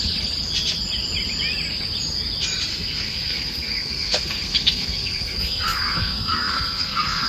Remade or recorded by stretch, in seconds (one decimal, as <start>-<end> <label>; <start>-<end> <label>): 0.0-2.7 recorded; 2.7-7.3 remade